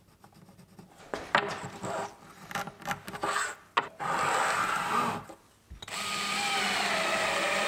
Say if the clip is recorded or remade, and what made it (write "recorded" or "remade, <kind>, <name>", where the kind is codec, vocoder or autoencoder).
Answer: recorded